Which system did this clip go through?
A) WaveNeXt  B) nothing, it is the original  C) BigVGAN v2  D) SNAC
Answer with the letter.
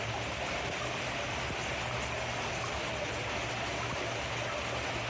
B